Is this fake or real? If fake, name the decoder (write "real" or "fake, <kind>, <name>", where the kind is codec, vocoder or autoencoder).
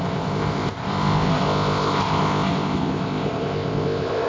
fake, codec, ZipCodec